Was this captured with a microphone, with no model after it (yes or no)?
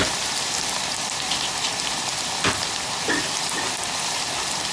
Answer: yes